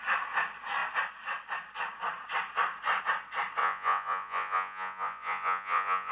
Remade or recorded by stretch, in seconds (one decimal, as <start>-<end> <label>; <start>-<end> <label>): 0.0-3.6 recorded; 3.6-6.1 remade